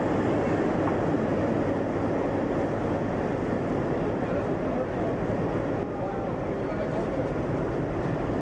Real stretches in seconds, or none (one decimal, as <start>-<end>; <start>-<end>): 0.0-8.4